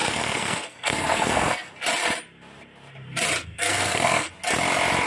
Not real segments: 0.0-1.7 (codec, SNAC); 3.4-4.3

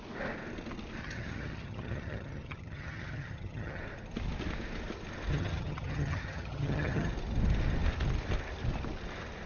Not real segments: 1.0-3.8 (vocoder, HiFi-GAN); 5.3-7.1

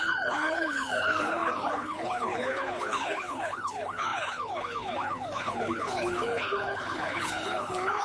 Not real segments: 0.0-8.0 (codec, HILCodec)

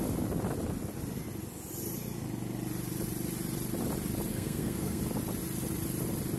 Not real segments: 4.3-5.0 (codec, SNAC)

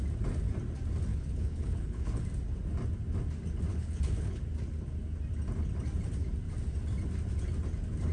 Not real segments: 1.1-2.2 (codec, HILCodec); 3.7-4.4

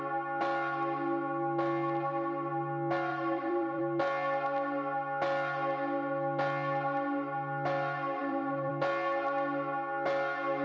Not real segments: 3.1-3.8 (vocoder, BigVGAN v2); 8.2-8.7

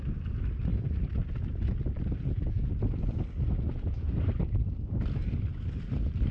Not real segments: none